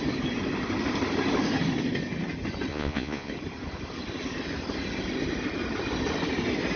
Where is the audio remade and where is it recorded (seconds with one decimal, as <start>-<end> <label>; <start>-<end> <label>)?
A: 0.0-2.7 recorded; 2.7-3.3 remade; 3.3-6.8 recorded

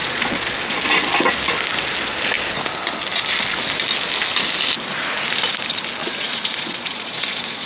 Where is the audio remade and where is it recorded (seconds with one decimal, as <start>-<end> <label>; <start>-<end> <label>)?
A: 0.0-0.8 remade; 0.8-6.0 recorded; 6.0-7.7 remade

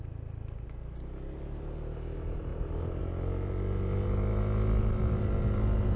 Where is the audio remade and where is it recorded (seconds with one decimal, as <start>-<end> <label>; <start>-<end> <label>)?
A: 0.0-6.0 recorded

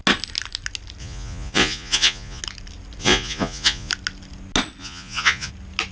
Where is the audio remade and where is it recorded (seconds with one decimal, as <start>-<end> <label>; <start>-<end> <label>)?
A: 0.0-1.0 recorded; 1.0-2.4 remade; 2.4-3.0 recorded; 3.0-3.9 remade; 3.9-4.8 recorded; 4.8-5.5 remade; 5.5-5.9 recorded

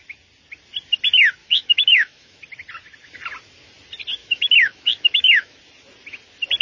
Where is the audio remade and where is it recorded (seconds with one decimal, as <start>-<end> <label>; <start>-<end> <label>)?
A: 0.0-1.4 recorded; 1.4-2.4 remade; 2.4-4.2 recorded; 4.2-5.6 remade; 5.6-6.6 recorded

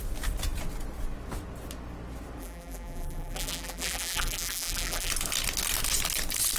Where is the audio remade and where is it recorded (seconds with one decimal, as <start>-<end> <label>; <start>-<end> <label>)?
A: 0.0-2.4 recorded; 2.4-5.1 remade; 5.1-6.6 recorded

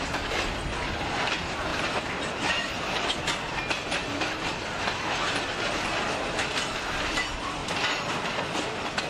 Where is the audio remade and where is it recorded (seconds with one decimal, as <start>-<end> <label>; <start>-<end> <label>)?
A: 0.0-9.1 recorded

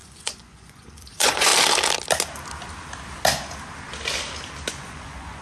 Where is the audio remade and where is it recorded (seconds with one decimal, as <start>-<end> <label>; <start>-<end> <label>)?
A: 0.0-1.5 remade; 1.5-4.7 recorded; 4.7-5.4 remade